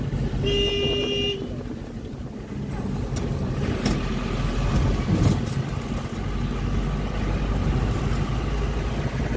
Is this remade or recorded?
recorded